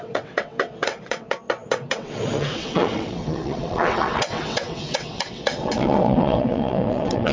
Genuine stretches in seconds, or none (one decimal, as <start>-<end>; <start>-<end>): none